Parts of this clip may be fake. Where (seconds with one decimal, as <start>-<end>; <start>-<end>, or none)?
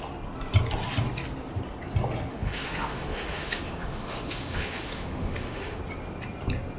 2.3-5.8